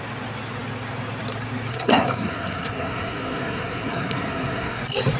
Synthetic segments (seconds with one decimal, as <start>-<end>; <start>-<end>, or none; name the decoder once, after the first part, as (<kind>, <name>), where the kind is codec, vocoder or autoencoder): 1.7-4.8 (codec, SNAC)